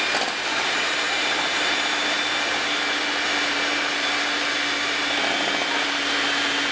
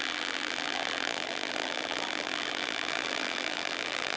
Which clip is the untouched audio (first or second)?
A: first